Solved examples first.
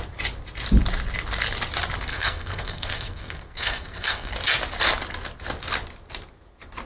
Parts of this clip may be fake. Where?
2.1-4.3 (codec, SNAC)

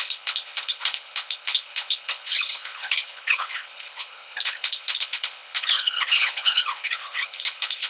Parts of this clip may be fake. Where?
0.0-7.9 (codec, HILCodec)